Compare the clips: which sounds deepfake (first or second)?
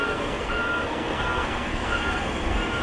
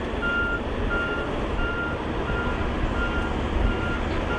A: first